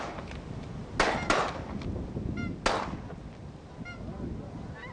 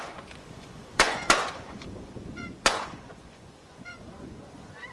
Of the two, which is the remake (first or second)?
second